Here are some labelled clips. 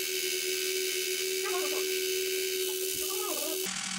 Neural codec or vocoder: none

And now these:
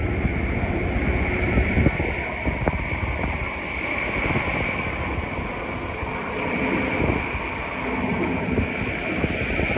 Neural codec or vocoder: none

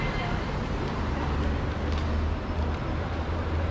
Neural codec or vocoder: none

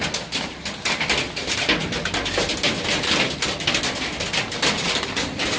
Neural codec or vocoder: none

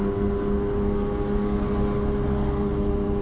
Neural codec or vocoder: none